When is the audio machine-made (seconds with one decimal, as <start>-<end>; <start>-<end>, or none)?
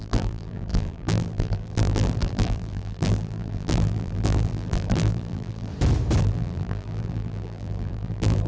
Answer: 0.0-5.7; 6.2-8.5